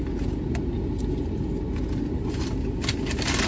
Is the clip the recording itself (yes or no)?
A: yes